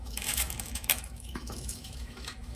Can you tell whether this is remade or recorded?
remade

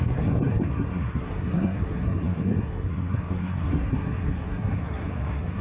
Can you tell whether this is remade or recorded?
remade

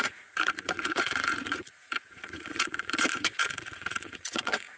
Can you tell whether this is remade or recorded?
remade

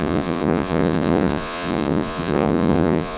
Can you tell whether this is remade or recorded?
remade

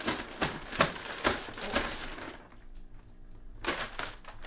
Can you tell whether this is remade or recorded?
recorded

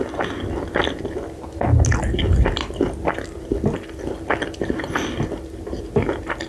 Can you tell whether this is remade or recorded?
recorded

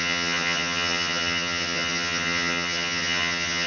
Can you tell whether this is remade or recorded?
remade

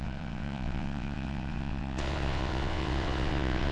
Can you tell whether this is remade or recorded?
remade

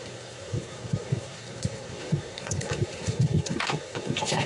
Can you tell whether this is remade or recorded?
remade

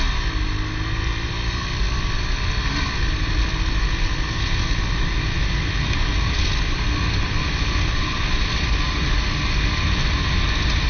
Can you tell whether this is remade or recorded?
recorded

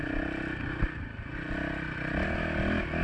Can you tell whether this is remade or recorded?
recorded